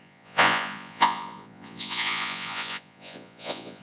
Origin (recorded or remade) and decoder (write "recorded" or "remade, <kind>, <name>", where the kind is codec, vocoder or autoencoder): remade, vocoder, Vocos